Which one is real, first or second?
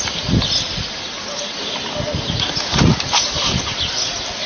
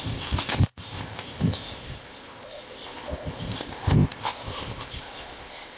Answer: first